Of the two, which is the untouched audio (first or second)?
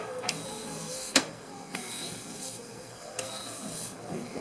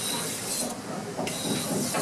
second